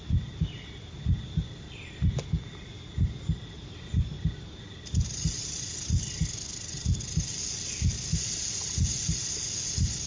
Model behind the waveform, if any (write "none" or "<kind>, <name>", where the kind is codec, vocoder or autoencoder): none